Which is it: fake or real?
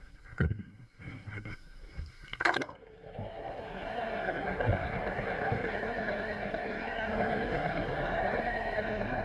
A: fake